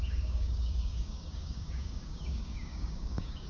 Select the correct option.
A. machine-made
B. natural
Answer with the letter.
A